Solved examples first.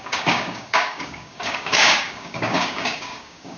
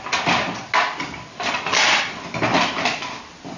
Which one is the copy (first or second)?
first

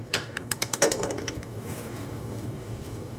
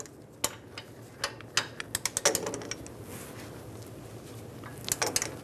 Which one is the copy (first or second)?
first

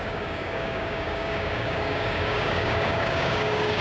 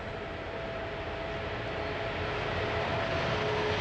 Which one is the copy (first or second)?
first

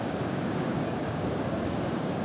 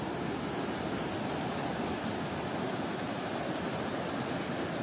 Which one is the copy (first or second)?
first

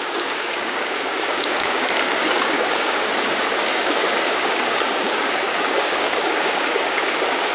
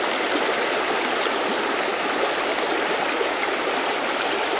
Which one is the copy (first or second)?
first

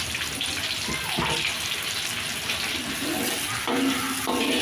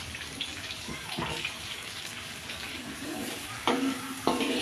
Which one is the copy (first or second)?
second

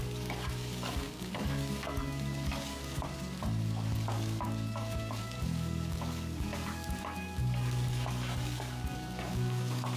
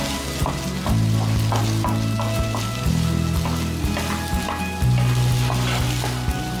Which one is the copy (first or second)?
first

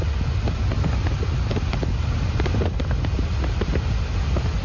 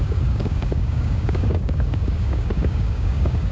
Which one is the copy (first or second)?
second